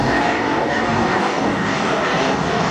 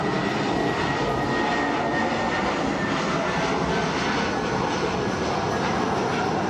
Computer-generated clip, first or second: first